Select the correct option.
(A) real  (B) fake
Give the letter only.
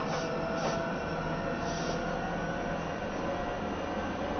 A